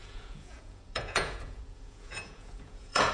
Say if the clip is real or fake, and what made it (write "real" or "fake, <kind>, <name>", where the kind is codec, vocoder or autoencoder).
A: fake, vocoder, Vocos